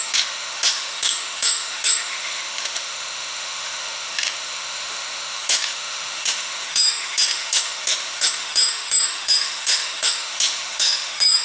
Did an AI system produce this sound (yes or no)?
yes